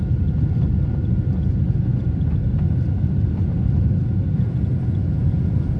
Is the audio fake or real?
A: real